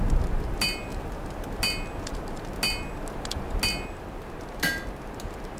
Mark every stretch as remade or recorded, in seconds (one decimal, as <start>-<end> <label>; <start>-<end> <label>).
0.0-5.6 recorded